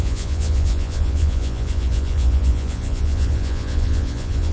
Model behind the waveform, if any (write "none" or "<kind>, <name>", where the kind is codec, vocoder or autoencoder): vocoder, Vocos